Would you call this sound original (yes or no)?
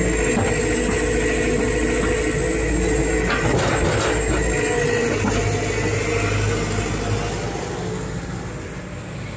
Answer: yes